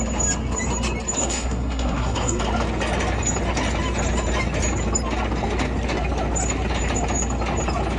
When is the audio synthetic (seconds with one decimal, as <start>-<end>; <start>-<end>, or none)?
1.2-2.4